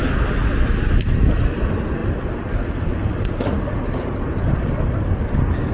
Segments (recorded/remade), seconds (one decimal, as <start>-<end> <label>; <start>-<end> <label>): 0.0-5.7 recorded

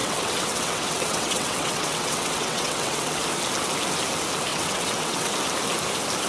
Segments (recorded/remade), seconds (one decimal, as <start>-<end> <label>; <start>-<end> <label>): 0.0-3.2 remade; 3.2-4.5 recorded; 4.5-5.3 remade; 5.3-6.3 recorded

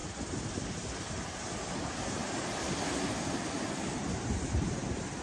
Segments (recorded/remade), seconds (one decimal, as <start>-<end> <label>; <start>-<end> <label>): 0.0-5.2 recorded

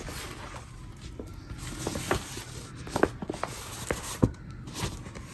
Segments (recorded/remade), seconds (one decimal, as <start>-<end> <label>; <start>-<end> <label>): 0.0-5.3 recorded